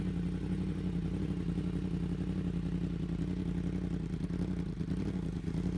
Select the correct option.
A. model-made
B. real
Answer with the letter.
B